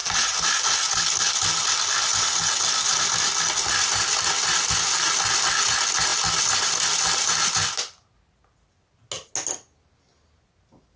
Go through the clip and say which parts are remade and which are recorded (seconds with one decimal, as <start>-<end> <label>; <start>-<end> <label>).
0.0-0.6 remade; 0.6-11.0 recorded